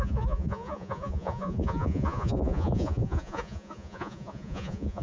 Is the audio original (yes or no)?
no